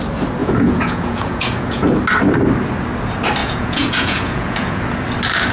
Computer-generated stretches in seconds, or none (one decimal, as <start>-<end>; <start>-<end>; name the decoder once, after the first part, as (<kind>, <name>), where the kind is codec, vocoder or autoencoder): 0.4-1.9 (vocoder, Vocos); 3.4-4.8